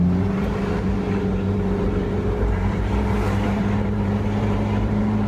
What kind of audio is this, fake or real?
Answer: fake